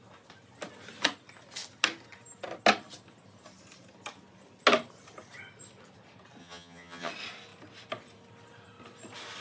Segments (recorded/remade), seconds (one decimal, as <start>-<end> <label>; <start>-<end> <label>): 0.0-6.4 recorded; 6.4-7.1 remade; 7.1-9.4 recorded